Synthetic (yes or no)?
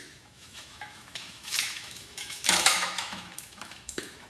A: yes